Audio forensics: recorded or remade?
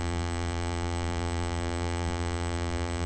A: remade